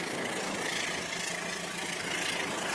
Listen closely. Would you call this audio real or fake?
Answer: real